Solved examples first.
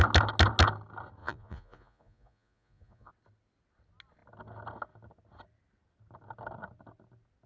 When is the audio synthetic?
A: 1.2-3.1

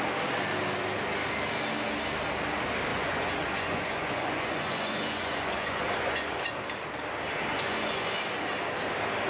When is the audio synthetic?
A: 2.9-6.5; 7.5-8.2

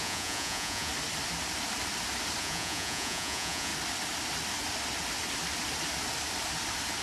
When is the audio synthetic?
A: 0.0-0.9; 2.4-3.7

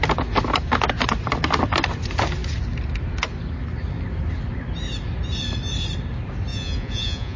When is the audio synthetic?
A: 6.5-7.4

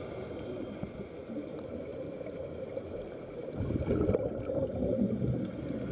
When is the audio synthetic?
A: none

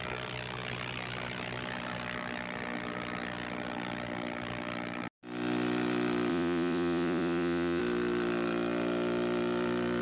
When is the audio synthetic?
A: 6.3-7.8

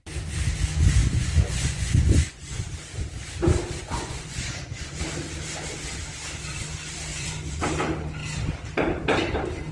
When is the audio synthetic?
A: 1.0-2.7; 3.8-5.0; 7.1-7.7